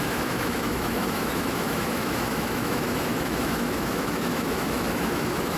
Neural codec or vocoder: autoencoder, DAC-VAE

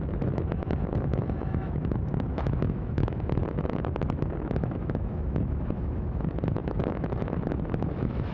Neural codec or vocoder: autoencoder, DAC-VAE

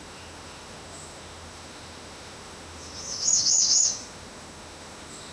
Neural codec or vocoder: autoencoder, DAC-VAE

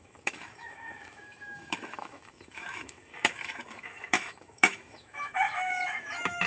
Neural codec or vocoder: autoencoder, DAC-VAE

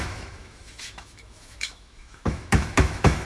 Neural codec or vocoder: autoencoder, DAC-VAE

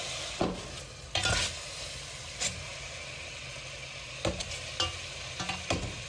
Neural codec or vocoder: none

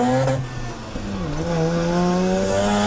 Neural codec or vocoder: none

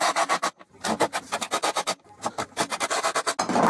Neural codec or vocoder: none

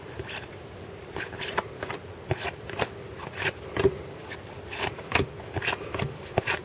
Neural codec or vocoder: none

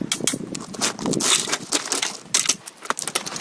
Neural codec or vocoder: none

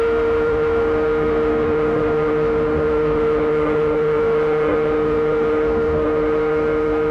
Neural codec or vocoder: autoencoder, DAC-VAE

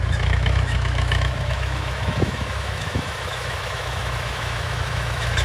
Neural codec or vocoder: autoencoder, DAC-VAE